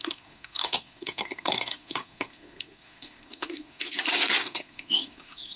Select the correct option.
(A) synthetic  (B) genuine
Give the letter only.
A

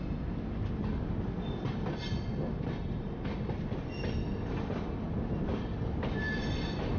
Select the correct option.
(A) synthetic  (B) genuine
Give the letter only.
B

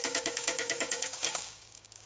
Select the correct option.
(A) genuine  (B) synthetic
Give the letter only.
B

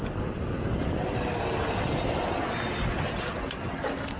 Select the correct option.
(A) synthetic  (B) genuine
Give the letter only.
B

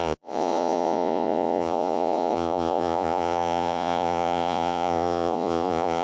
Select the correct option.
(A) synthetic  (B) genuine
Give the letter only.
A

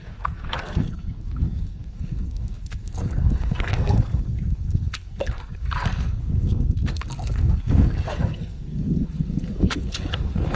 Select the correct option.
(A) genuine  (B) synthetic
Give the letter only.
B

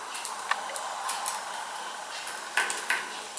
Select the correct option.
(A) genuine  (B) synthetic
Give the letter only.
A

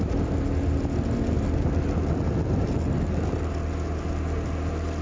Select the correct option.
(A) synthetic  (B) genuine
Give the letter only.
B